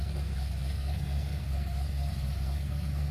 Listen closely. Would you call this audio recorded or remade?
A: remade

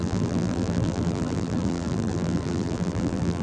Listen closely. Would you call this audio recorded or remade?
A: remade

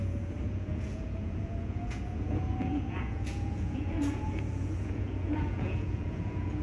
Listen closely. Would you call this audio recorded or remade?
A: remade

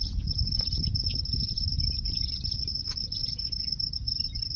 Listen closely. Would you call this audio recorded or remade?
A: recorded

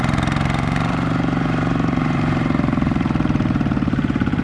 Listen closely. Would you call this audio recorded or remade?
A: remade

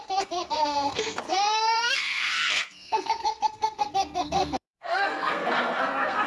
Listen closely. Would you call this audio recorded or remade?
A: remade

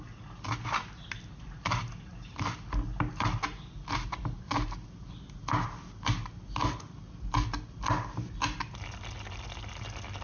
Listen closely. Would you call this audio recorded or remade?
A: recorded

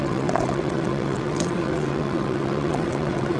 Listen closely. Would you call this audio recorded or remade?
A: remade